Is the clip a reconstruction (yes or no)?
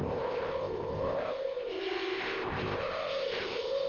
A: yes